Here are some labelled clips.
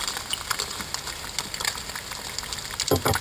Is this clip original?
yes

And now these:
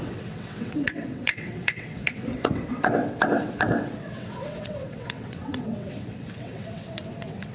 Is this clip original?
no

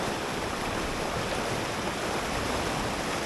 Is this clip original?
yes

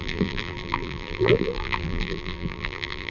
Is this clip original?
no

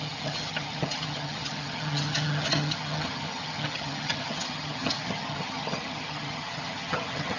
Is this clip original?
no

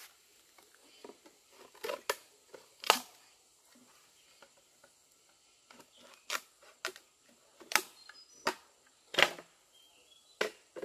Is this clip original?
yes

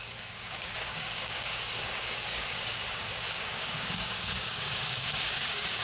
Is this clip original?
no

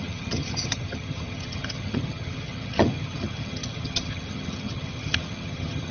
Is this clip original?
no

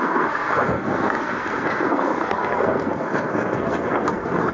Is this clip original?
no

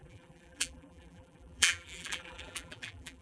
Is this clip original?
no